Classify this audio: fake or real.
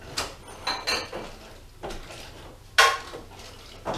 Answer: real